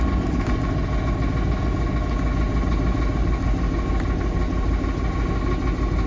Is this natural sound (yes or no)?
yes